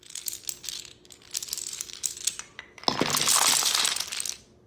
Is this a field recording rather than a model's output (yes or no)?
yes